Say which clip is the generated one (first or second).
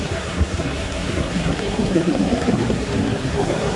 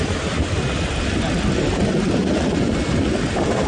first